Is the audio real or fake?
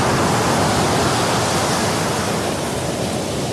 real